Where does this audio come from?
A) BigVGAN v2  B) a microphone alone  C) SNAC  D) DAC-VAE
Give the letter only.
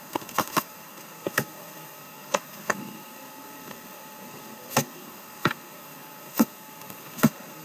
C